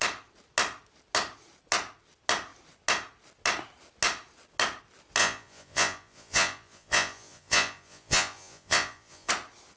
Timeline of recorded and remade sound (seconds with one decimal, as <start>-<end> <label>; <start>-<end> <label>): 0.0-5.2 recorded; 5.2-9.3 remade; 9.3-9.8 recorded